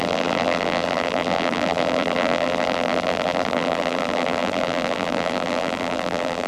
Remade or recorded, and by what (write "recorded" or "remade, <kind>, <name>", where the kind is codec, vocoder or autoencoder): remade, vocoder, BigVGAN v2